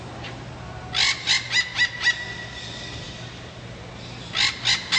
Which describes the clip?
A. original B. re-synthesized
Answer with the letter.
A